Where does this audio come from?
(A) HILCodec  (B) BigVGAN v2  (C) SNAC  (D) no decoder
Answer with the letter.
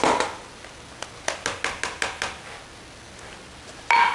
D